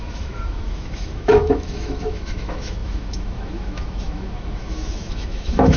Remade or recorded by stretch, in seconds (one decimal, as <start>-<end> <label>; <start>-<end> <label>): 0.0-5.8 remade